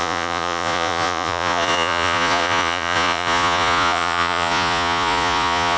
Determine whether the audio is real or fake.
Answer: fake